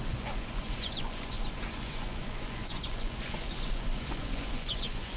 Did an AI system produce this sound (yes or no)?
yes